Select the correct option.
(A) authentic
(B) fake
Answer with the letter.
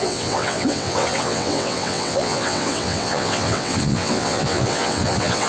B